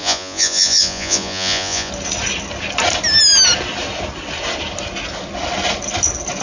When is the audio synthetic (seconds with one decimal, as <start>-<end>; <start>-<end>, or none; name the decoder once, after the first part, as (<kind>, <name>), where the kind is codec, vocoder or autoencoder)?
0.0-1.9 (vocoder, Vocos)